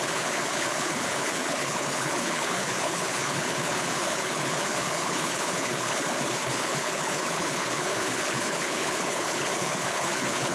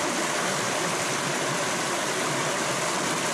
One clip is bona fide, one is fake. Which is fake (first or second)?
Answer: first